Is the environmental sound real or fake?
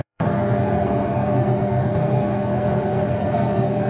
fake